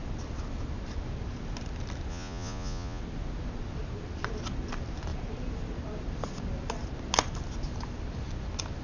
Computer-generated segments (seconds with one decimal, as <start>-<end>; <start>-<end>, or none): 2.1-3.0